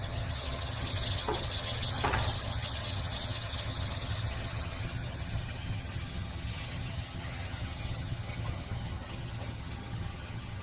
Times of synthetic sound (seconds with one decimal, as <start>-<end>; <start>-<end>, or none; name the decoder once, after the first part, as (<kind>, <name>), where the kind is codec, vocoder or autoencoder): 0.0-10.6 (vocoder, HiFi-GAN)

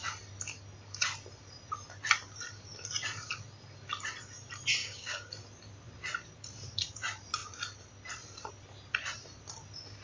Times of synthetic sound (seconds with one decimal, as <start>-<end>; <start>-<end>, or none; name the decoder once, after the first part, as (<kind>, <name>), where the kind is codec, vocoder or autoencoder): 4.8-5.3 (codec, DAC)

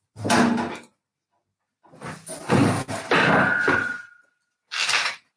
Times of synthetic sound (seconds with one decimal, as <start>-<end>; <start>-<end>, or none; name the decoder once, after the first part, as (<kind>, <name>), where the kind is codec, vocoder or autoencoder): none

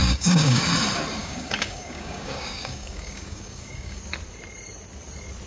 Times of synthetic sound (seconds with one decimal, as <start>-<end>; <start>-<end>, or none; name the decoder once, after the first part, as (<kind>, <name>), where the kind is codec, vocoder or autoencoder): 0.0-0.6 (codec, DAC); 1.2-4.0